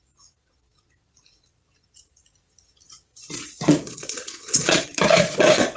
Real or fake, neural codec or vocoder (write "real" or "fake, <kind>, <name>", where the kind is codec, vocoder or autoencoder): fake, vocoder, Vocos